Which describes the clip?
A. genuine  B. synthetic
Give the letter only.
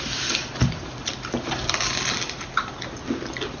A